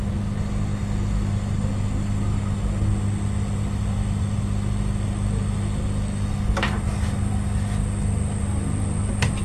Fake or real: real